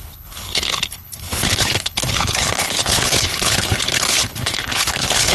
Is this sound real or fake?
fake